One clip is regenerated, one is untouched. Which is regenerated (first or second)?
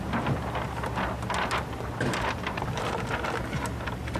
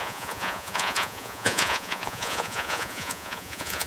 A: second